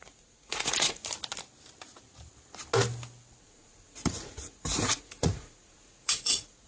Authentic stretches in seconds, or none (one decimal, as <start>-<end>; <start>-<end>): 1.0-3.4